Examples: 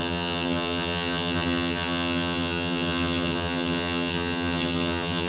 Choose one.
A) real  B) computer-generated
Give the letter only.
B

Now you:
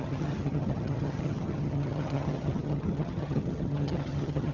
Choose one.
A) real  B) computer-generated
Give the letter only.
B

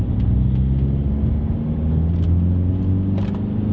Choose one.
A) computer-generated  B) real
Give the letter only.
B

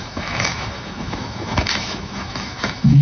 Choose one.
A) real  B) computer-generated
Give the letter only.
B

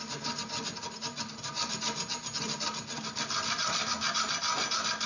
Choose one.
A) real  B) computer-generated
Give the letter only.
A